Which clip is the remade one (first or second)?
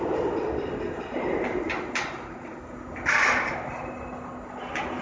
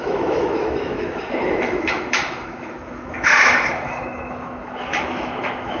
second